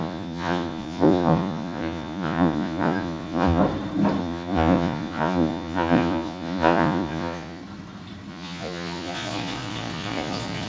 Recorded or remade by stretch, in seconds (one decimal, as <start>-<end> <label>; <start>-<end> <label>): 0.0-3.6 remade; 3.6-4.2 recorded; 4.2-7.6 remade; 7.6-8.3 recorded; 8.3-10.7 remade